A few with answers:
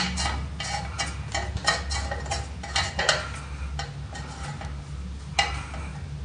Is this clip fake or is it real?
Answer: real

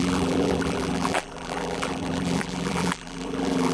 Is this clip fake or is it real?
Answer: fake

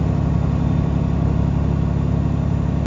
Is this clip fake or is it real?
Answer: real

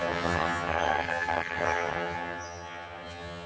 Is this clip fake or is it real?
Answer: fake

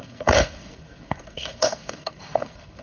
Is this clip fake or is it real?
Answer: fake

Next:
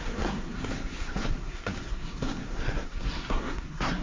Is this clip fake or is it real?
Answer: fake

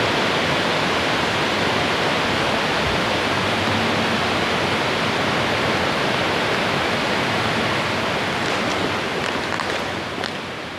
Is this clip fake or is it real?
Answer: real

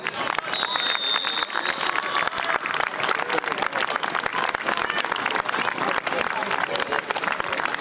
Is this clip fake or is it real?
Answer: real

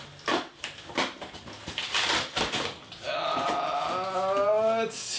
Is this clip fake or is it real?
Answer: real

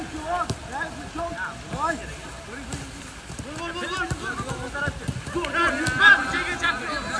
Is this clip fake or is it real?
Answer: real